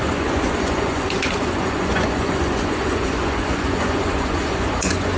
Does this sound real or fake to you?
fake